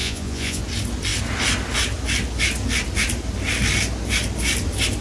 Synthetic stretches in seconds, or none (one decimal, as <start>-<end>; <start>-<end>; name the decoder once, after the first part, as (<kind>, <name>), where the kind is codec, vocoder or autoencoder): 0.0-0.6 (vocoder, Vocos)